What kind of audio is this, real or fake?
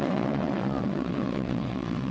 fake